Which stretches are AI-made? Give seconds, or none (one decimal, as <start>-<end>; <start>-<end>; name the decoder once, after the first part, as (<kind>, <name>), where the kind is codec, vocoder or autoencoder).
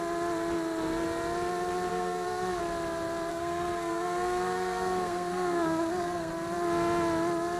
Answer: 1.9-2.6 (codec, SNAC); 3.3-6.3